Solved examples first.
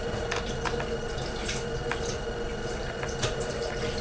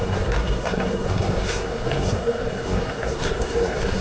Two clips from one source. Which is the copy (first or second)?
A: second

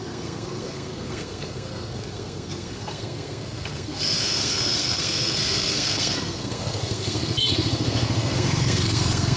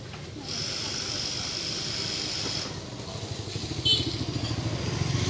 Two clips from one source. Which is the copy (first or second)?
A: first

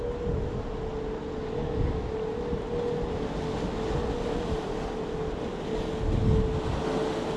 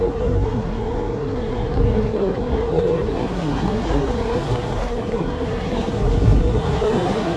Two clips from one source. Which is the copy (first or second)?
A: second